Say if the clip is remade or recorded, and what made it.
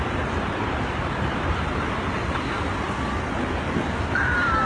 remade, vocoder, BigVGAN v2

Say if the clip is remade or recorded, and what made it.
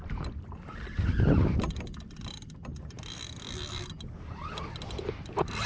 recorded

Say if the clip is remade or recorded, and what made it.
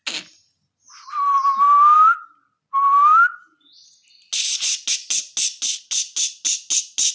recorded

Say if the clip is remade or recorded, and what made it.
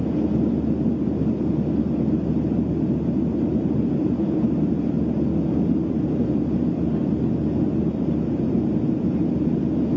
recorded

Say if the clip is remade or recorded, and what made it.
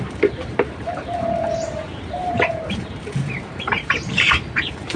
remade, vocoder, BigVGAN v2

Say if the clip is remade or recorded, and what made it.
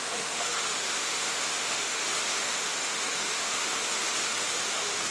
remade, autoencoder, DAC-VAE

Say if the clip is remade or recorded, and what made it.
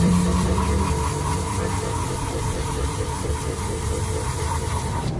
remade, vocoder, BigVGAN v2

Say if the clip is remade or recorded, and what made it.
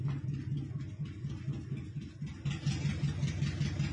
recorded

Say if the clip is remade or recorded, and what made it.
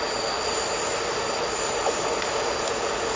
recorded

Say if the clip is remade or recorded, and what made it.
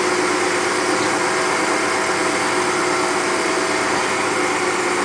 recorded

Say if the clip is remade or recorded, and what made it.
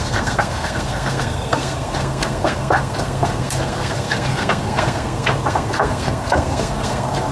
remade, codec, SNAC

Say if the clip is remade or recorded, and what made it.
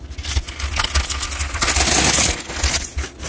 recorded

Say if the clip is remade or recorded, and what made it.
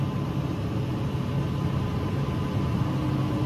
recorded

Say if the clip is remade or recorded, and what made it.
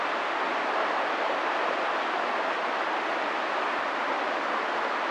recorded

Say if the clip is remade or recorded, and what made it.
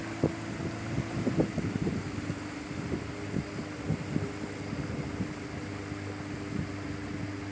recorded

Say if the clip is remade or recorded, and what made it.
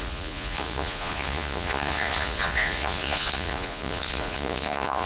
remade, vocoder, Vocos